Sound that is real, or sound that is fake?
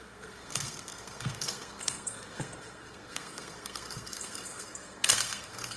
fake